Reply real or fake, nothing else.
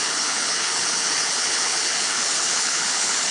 fake